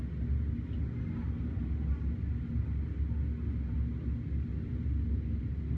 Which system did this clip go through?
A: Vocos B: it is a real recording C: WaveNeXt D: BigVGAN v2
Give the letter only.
B